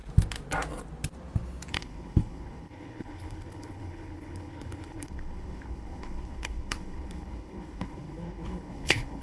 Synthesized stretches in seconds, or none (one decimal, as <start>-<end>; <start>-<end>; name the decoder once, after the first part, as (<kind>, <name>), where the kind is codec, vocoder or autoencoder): 1.7-9.2 (codec, HILCodec)